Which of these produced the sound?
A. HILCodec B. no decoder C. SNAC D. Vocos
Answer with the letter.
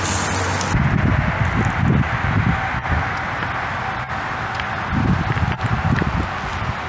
B